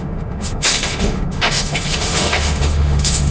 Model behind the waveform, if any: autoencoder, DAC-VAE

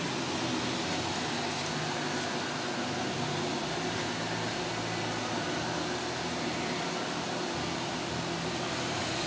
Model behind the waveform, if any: none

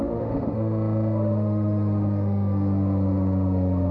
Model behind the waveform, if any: autoencoder, DAC-VAE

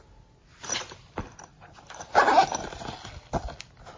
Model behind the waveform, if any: none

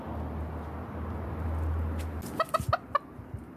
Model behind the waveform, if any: none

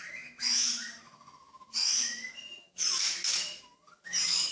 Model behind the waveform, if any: autoencoder, DAC-VAE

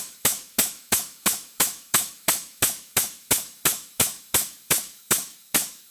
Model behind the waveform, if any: autoencoder, DAC-VAE